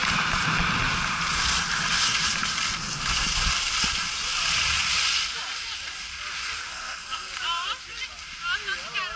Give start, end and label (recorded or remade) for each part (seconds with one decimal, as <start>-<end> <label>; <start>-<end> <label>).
0.0-6.7 recorded; 6.7-7.3 remade; 7.3-9.2 recorded